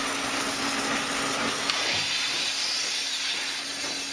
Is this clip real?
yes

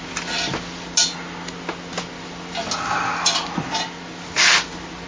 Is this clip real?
yes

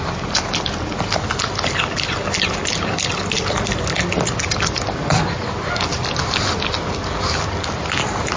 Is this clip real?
yes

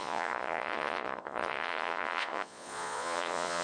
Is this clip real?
no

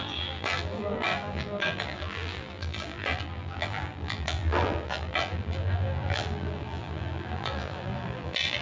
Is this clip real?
no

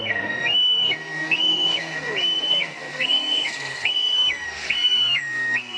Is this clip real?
no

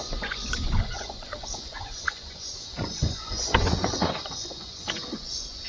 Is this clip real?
no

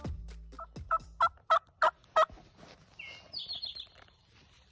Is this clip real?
yes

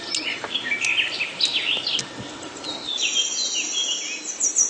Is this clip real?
yes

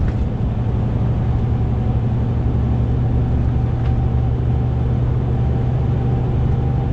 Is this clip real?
yes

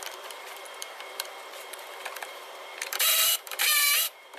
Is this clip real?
no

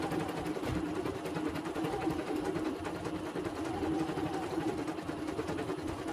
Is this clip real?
yes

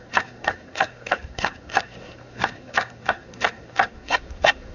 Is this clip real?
no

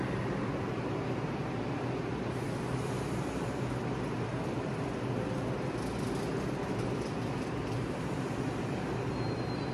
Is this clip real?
yes